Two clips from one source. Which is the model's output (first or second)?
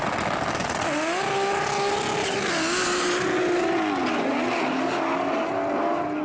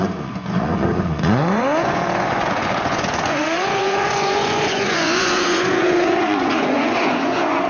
second